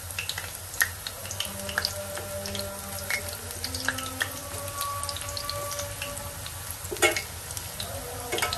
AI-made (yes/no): no